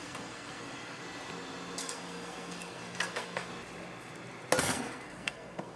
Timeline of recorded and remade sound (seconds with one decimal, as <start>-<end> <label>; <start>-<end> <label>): 0.0-1.0 remade; 1.0-1.8 recorded; 1.8-3.5 remade; 3.5-4.6 recorded; 4.6-5.8 remade